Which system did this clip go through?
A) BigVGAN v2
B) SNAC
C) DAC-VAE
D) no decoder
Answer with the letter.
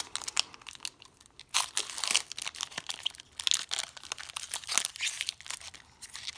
D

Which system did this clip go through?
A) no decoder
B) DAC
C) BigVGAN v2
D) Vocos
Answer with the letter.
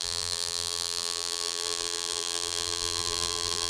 C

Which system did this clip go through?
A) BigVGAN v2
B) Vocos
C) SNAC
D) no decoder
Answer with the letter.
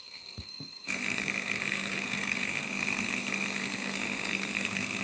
C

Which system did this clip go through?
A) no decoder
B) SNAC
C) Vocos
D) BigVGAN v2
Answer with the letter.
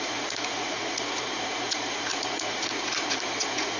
C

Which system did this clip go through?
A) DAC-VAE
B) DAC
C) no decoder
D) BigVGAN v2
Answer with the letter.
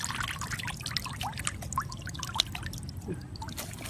C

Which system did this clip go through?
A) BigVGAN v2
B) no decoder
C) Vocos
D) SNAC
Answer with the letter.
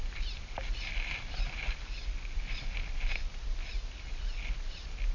B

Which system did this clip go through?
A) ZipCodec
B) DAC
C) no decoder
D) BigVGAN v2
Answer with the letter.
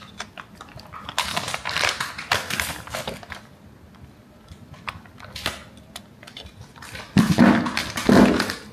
C